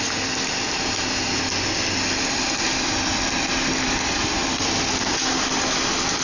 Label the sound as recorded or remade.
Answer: recorded